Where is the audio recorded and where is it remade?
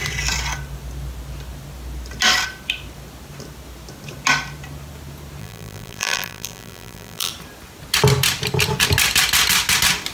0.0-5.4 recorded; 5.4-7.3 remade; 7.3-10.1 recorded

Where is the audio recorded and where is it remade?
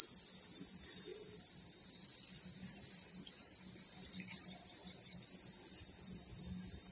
0.0-1.1 recorded; 1.1-5.2 remade; 5.2-6.9 recorded